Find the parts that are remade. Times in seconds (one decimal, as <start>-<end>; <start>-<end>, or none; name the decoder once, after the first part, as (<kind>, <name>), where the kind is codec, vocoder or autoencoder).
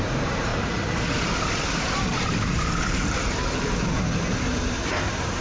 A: 0.0-0.5 (vocoder, BigVGAN v2); 1.6-5.4